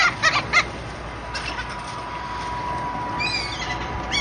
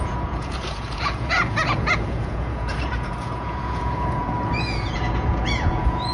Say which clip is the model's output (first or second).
second